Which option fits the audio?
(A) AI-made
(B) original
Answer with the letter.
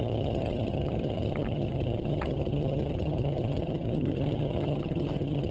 A